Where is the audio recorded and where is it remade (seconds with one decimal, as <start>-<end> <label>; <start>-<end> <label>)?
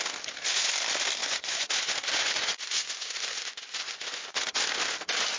0.0-1.2 recorded; 1.2-4.4 remade; 4.4-5.4 recorded